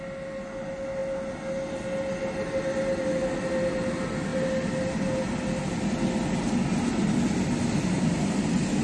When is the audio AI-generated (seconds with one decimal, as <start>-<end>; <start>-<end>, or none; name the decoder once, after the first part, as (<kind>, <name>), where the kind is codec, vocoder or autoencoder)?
none